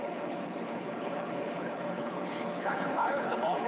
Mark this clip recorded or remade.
remade